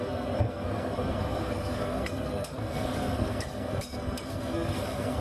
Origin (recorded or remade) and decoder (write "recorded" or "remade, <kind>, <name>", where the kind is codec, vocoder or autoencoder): remade, codec, SNAC